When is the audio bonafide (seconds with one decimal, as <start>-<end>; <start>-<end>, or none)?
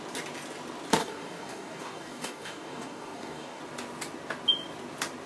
0.0-1.0; 3.6-5.3